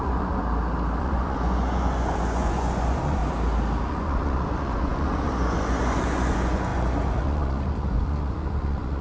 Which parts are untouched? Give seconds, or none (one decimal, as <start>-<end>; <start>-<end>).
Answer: 0.4-1.0; 3.2-3.8